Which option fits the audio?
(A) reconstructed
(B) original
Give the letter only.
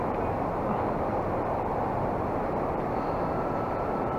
B